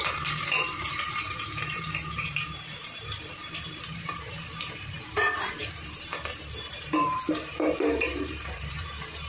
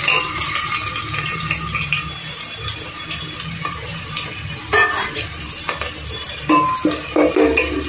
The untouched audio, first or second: second